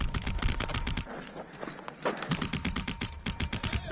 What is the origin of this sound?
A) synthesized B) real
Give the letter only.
B